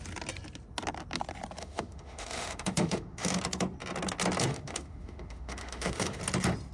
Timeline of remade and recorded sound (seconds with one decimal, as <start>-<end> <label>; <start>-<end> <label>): 0.0-1.6 recorded; 1.6-3.4 remade; 3.4-4.5 recorded; 4.5-6.2 remade; 6.2-6.7 recorded